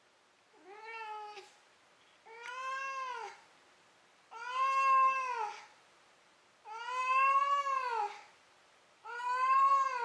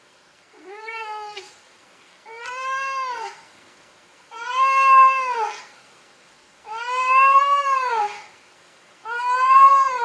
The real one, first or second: first